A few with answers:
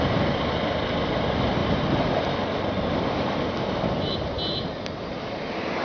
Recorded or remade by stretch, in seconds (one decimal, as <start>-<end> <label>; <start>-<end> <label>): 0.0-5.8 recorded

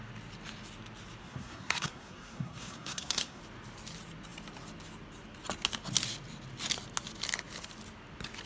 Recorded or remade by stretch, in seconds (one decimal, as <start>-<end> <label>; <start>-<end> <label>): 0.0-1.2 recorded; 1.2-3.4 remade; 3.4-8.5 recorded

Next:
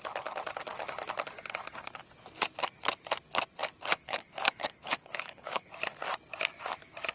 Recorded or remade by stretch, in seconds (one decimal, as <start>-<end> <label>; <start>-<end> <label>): 0.0-3.9 recorded; 3.9-5.7 remade; 5.7-7.1 recorded

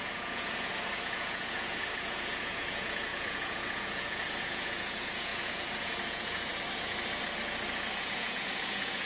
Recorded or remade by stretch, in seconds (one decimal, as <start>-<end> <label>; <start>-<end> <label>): 0.0-6.5 remade; 6.5-8.0 recorded; 8.0-9.1 remade

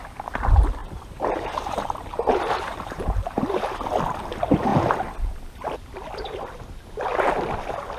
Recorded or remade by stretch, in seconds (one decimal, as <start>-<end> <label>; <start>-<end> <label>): 0.0-0.8 recorded; 0.8-3.4 remade; 3.4-8.0 recorded

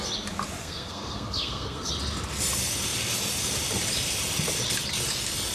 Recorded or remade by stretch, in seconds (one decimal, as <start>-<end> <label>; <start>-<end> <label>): 0.0-0.6 recorded; 0.6-1.9 remade; 1.9-5.5 recorded